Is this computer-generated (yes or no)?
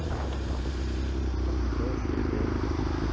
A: no